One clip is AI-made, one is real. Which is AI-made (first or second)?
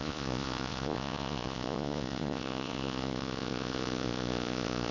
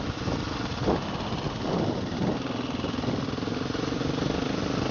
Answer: first